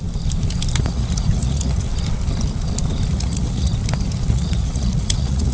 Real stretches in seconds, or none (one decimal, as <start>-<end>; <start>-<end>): 0.0-0.8; 1.9-3.1; 3.7-4.3